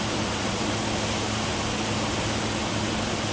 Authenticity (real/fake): real